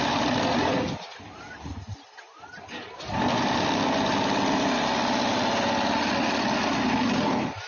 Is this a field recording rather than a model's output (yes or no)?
yes